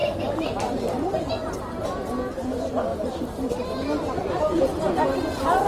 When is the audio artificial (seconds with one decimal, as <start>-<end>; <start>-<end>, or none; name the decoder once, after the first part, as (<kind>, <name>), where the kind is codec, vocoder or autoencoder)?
0.0-1.3 (vocoder, BigVGAN v2); 2.9-3.5

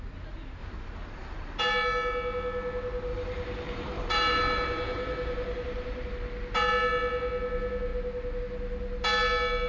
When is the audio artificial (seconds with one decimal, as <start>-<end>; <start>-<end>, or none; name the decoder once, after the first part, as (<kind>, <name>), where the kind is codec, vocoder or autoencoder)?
0.6-1.6 (vocoder, BigVGAN v2); 3.1-6.1

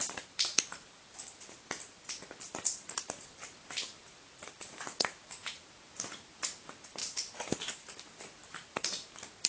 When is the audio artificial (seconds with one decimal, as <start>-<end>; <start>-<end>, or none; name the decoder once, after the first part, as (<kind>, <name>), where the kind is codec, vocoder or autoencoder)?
0.0-5.4 (vocoder, BigVGAN v2); 6.4-7.0; 7.7-9.5